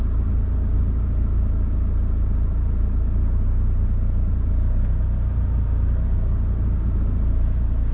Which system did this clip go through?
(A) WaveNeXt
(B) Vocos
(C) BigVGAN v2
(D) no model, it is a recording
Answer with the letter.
D